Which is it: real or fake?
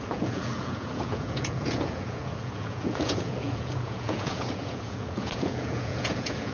fake